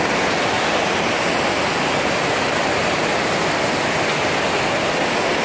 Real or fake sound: real